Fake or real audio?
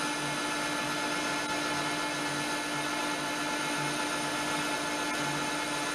real